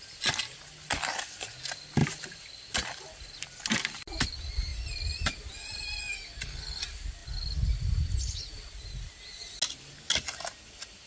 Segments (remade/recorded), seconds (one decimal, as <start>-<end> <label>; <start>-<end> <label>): 0.0-11.1 recorded